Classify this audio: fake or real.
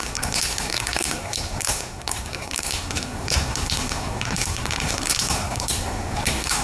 fake